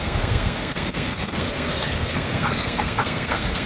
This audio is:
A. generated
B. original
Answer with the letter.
A